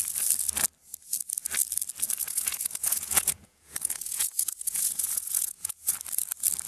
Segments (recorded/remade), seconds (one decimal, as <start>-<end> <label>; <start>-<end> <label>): 0.0-2.2 recorded; 2.2-6.0 remade; 6.0-6.7 recorded